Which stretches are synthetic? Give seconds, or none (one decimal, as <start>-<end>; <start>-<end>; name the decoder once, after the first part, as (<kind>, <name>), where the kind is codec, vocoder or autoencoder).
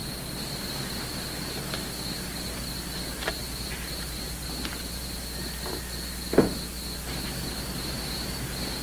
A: none